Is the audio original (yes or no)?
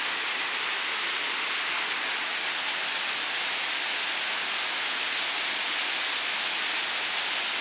yes